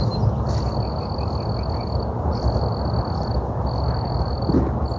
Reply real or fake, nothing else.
real